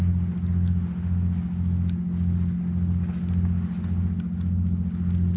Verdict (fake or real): real